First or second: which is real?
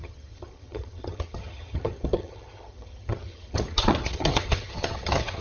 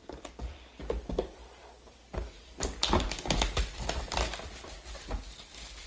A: second